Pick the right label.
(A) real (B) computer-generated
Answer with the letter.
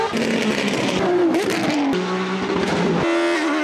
A